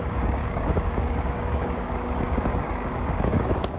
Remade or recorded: remade